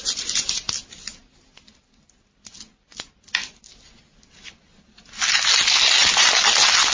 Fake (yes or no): no